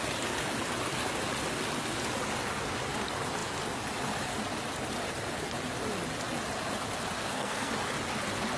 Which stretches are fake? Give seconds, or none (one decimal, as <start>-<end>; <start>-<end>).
7.2-7.7